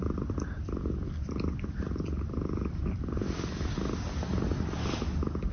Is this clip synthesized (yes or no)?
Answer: no